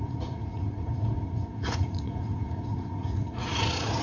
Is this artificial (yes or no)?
yes